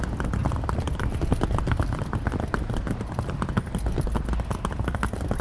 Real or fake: real